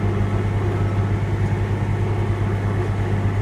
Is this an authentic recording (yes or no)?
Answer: yes